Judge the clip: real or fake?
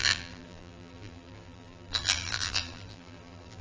fake